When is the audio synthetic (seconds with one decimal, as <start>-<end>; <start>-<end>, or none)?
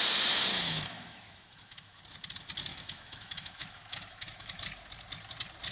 0.5-2.0; 2.7-4.6